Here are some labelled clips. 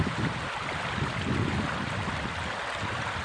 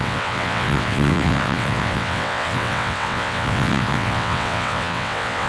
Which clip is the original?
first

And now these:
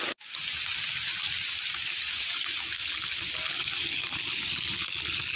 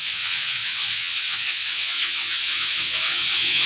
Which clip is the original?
first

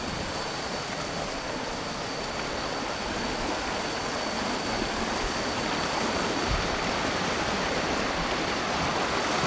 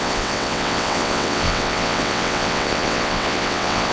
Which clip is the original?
first